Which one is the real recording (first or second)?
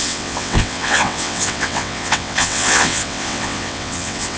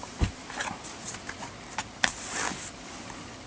second